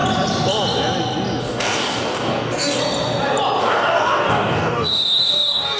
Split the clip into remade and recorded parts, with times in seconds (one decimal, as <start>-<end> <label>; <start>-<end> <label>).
0.0-1.4 recorded; 1.4-2.8 remade; 2.8-3.6 recorded; 3.6-5.8 remade